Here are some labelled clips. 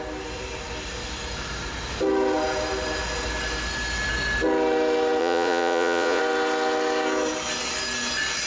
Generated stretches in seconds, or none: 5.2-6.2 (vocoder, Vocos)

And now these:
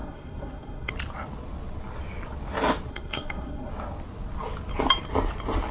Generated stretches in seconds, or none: 0.0-0.9 (codec, SNAC); 2.9-3.7

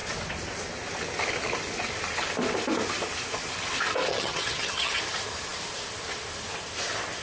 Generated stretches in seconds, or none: 4.1-5.0 (vocoder, HiFi-GAN)